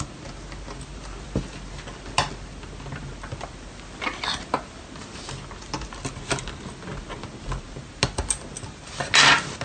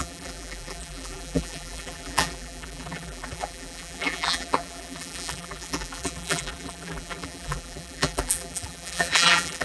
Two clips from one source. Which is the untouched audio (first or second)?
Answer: first